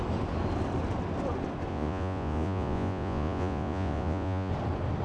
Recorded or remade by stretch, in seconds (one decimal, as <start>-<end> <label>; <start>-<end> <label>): 0.0-1.7 recorded; 1.7-4.5 remade; 4.5-5.0 recorded